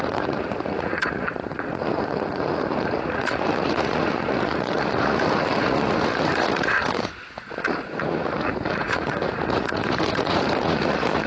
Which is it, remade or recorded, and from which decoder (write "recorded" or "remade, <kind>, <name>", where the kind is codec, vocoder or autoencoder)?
remade, vocoder, Vocos